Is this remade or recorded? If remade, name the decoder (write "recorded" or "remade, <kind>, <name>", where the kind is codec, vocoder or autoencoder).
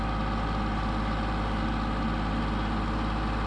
recorded